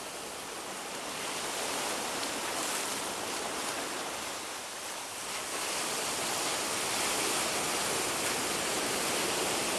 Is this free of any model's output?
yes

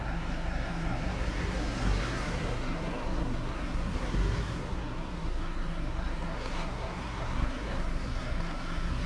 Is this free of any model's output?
no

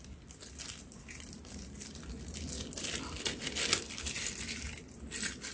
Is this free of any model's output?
yes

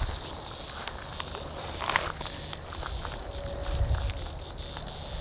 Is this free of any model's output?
yes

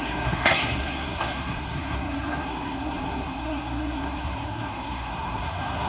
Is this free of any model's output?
no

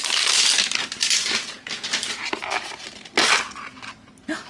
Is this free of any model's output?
yes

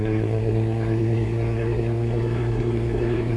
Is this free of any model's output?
no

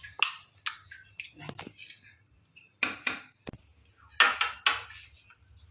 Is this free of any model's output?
yes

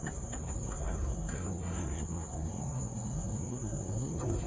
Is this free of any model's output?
no